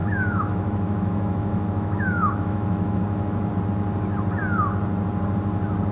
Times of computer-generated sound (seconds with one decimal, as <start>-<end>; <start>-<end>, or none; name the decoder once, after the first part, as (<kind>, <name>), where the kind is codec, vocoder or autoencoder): 0.0-3.5 (autoencoder, DAC-VAE)